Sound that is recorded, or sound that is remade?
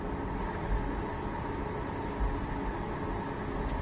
recorded